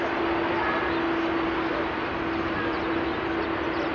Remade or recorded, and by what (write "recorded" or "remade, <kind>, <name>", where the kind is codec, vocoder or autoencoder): recorded